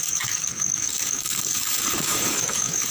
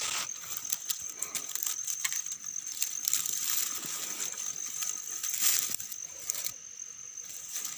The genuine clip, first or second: second